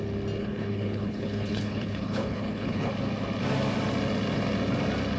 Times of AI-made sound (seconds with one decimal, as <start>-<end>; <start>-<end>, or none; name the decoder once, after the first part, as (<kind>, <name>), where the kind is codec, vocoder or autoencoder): 0.4-2.9 (codec, HILCodec)